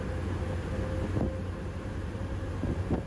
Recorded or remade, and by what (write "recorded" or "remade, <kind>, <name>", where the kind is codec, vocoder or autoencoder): recorded